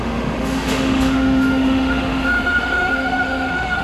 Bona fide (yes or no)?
no